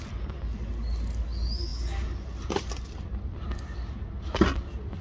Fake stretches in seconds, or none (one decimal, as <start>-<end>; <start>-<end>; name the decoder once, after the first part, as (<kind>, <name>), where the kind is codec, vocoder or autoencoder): none